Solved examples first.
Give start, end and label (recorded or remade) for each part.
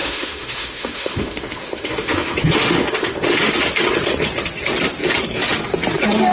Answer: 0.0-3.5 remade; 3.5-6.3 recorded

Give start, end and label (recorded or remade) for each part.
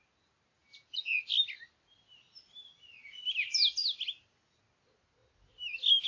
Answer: 0.0-0.6 recorded; 0.6-1.2 remade; 1.2-6.1 recorded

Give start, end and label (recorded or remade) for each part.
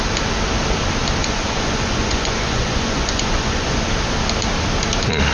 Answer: 0.0-1.2 recorded; 1.2-3.8 remade; 3.8-5.3 recorded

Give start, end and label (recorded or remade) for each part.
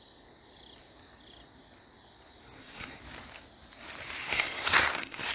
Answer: 0.0-2.4 recorded; 2.4-3.0 remade; 3.0-4.2 recorded; 4.2-5.3 remade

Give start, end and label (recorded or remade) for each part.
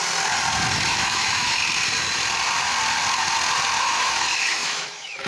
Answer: 0.0-0.9 recorded; 0.9-1.6 remade; 1.6-3.8 recorded; 3.8-5.3 remade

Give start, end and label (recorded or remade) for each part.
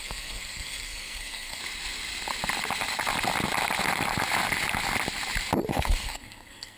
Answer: 0.0-1.6 remade; 1.6-5.7 recorded; 5.7-6.8 remade